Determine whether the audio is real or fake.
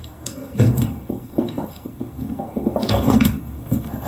fake